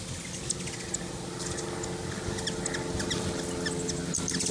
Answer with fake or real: real